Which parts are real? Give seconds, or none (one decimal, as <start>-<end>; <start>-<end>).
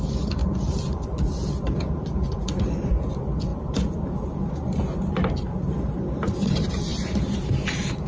0.0-8.1